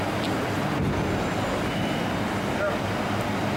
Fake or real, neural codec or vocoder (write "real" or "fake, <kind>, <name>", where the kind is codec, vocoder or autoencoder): real